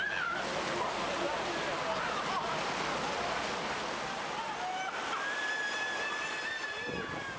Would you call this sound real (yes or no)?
yes